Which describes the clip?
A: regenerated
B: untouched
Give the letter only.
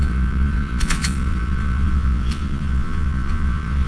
A